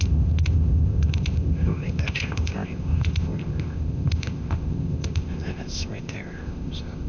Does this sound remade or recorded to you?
remade